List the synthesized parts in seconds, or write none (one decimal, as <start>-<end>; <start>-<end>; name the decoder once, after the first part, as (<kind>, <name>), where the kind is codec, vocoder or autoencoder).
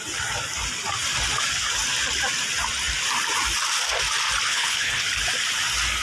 4.5-5.0 (codec, HILCodec)